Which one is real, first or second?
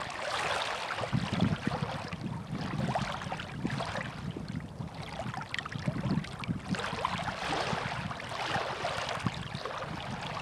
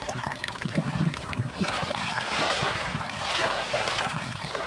first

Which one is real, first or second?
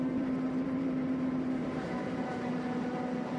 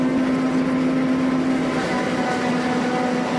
second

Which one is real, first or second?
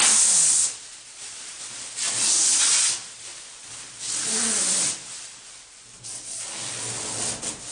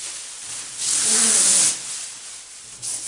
first